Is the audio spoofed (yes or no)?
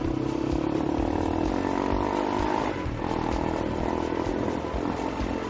no